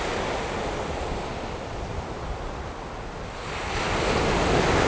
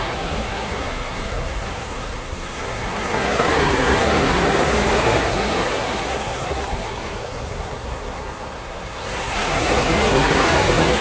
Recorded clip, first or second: first